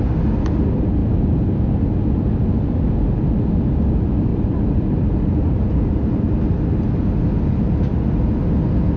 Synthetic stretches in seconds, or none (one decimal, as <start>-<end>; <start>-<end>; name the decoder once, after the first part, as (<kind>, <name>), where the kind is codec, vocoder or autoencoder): 1.0-1.6 (vocoder, BigVGAN v2); 4.3-6.4